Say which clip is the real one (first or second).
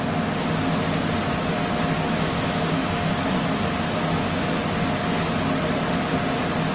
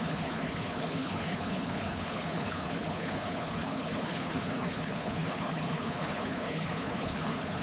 first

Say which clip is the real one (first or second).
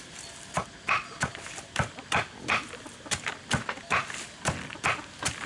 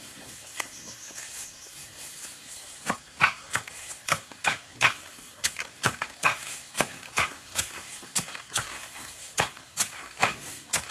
first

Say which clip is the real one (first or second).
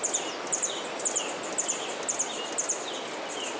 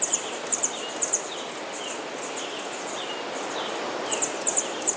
first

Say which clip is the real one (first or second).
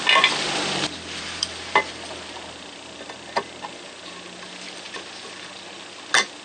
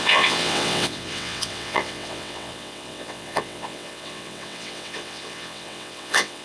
first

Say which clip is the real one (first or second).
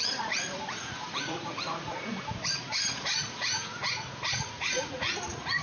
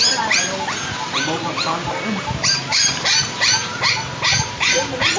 second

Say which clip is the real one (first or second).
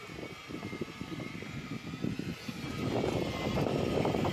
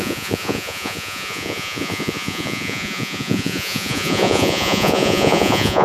first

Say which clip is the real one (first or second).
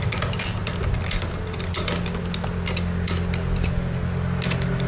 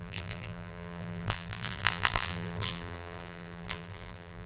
first